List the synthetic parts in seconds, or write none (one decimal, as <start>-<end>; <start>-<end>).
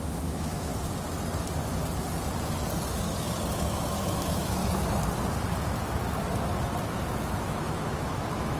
0.0-0.7; 3.5-4.6; 6.8-8.6